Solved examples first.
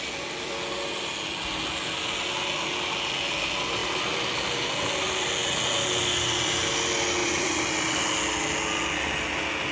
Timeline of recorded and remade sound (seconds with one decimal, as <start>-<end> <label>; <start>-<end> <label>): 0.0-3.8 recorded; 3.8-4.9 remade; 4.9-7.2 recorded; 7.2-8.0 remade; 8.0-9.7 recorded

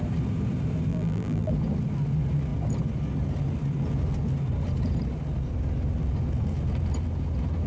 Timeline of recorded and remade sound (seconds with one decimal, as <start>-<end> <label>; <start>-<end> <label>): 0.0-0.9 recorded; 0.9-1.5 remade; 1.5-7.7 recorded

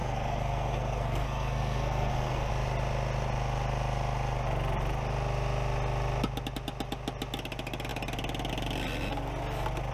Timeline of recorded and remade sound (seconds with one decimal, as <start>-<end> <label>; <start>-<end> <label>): 0.0-2.5 remade; 2.5-9.9 recorded

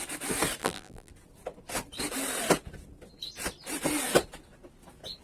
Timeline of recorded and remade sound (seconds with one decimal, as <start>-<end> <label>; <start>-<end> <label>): 0.0-0.6 recorded; 0.6-1.1 remade; 1.1-5.2 recorded

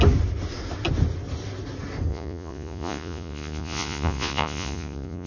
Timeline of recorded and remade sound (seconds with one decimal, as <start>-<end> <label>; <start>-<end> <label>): 0.0-2.1 recorded; 2.1-5.3 remade